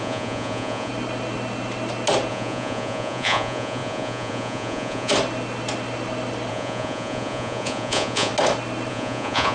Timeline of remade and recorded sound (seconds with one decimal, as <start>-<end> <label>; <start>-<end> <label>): 0.0-0.9 remade; 0.9-2.3 recorded; 2.3-5.1 remade; 5.1-6.5 recorded; 6.5-8.3 remade; 8.3-8.9 recorded; 8.9-9.5 remade

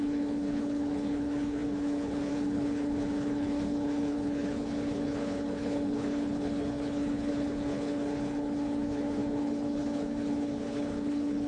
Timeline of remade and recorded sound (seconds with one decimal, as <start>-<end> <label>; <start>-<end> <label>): 0.0-11.5 remade

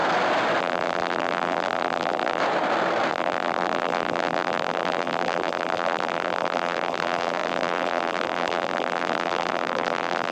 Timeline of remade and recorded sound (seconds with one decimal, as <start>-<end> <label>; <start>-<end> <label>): 0.0-0.6 recorded; 0.6-2.4 remade; 2.4-3.1 recorded; 3.1-10.3 remade

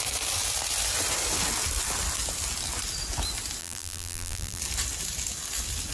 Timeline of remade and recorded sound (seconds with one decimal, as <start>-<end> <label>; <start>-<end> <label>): 0.0-3.6 recorded; 3.6-4.6 remade; 4.6-5.9 recorded